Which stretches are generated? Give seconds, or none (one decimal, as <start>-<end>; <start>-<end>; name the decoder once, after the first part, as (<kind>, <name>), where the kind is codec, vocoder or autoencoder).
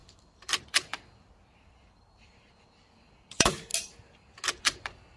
0.0-3.7 (vocoder, BigVGAN v2); 4.6-5.2